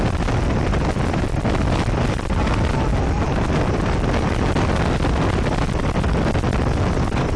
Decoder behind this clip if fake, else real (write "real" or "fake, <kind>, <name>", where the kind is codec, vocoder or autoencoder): real